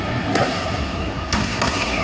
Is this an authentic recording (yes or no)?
no